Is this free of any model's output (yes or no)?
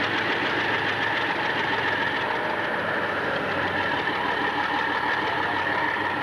yes